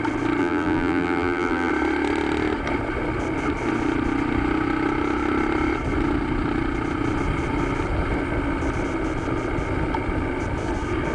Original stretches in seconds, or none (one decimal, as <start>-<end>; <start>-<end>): 0.0-0.4; 1.7-11.1

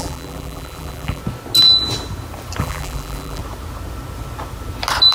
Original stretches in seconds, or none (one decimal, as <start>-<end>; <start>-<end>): 1.2-2.6; 3.4-5.1

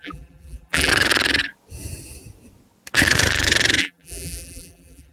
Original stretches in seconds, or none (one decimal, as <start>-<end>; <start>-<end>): 0.9-3.8

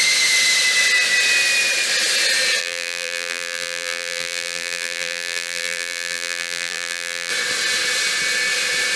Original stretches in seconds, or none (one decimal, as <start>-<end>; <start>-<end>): 0.0-2.6; 7.3-9.0

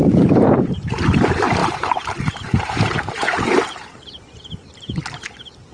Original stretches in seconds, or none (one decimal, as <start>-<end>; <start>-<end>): 0.9-1.6; 5.0-5.7

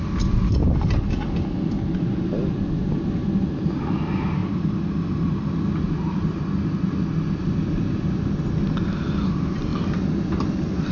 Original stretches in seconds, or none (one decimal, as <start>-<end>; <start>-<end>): 0.0-4.4; 5.5-10.9